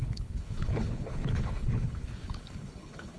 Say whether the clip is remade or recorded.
remade